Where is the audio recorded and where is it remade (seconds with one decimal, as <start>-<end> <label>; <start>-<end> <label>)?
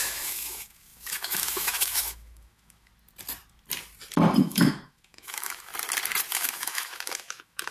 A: 0.0-2.9 remade; 2.9-4.4 recorded; 4.4-5.7 remade; 5.7-6.3 recorded; 6.3-7.7 remade